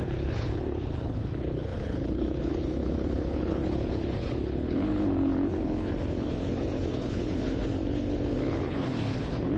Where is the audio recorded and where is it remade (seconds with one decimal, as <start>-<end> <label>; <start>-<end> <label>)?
0.0-9.6 remade